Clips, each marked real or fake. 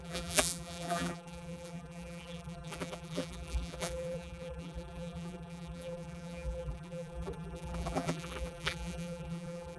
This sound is fake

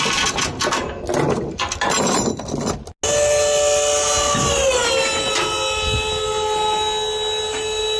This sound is real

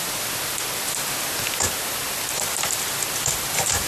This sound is real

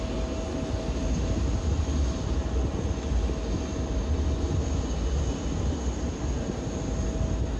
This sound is real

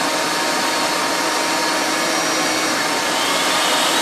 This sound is real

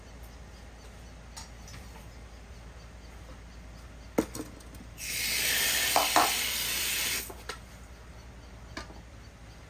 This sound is real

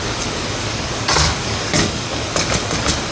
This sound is fake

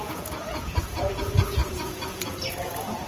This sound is fake